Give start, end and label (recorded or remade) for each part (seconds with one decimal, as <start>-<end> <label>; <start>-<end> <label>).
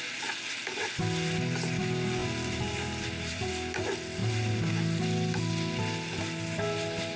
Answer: 0.0-2.2 recorded; 2.2-3.5 remade; 3.5-4.2 recorded; 4.2-4.7 remade; 4.7-7.2 recorded